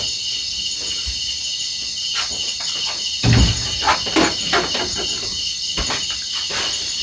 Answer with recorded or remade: recorded